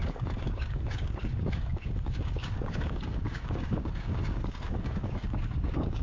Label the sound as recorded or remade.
remade